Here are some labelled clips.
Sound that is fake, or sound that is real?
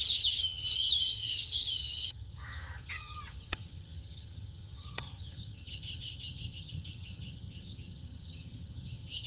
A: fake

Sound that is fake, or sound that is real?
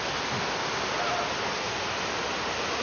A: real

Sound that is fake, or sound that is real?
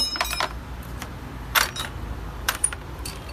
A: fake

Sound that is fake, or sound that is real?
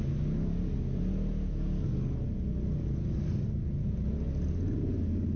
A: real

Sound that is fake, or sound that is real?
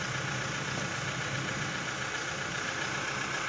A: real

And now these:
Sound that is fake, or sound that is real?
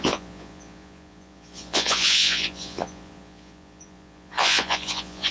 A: fake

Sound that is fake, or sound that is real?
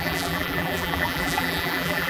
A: fake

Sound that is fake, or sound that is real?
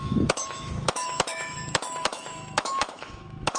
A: fake